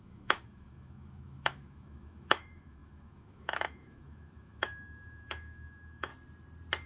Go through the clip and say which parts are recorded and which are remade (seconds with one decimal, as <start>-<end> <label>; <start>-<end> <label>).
0.0-6.1 remade; 6.1-6.9 recorded

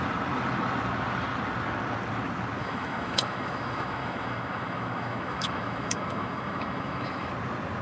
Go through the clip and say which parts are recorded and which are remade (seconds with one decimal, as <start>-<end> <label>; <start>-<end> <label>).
0.0-2.6 recorded; 2.6-7.3 remade; 7.3-7.8 recorded